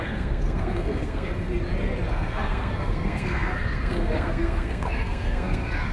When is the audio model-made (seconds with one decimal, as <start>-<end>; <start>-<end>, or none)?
0.0-1.3; 2.1-5.9